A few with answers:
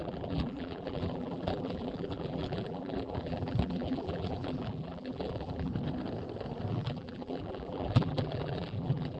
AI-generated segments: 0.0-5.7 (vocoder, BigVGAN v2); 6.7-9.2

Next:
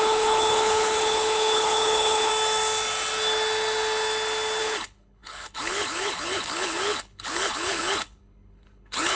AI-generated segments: 0.0-2.3 (codec, HILCodec); 4.6-9.2

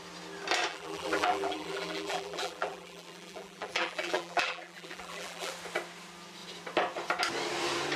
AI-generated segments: 0.7-5.5 (vocoder, BigVGAN v2)

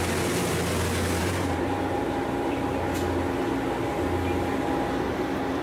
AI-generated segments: 1.2-2.6 (vocoder, BigVGAN v2)